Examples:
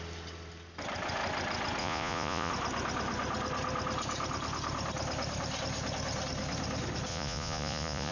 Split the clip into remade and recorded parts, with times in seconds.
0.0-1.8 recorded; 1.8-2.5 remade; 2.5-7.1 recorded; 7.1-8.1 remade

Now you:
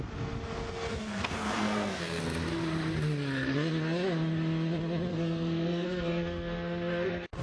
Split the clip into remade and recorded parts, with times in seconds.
0.0-0.9 recorded; 0.9-2.2 remade; 2.2-5.1 recorded; 5.1-7.4 remade

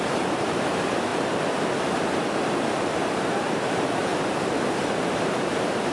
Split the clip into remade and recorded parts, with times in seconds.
0.0-1.1 remade; 1.1-2.5 recorded; 2.5-5.9 remade

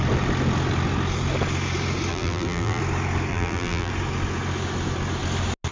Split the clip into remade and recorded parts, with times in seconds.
0.0-2.1 recorded; 2.1-2.8 remade; 2.8-3.3 recorded; 3.3-3.9 remade; 3.9-5.7 recorded

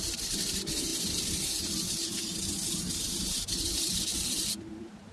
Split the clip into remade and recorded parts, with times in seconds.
0.0-5.1 remade

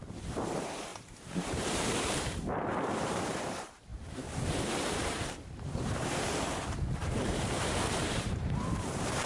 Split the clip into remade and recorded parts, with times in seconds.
0.0-9.3 remade

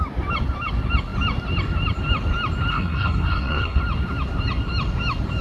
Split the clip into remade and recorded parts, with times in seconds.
0.0-2.7 recorded; 2.7-3.8 remade; 3.8-5.4 recorded

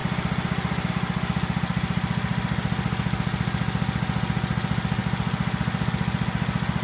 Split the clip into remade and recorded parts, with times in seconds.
0.0-6.8 recorded